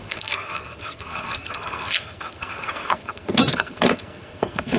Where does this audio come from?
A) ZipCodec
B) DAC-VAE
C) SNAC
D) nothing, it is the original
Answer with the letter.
C